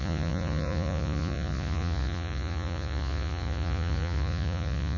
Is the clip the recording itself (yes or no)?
no